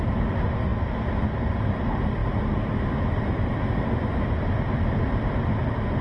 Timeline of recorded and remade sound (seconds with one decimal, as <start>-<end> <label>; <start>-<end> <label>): 0.0-6.0 recorded